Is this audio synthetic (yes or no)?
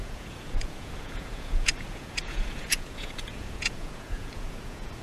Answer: yes